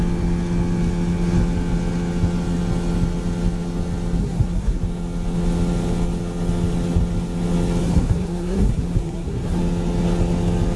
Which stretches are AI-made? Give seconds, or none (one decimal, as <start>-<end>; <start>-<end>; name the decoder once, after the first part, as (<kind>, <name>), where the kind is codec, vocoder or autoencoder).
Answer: 4.2-4.8 (codec, SNAC); 7.8-9.6